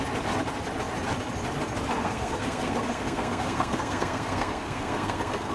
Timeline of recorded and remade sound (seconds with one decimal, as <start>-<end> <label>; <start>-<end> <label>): 0.0-2.0 recorded; 2.0-5.5 remade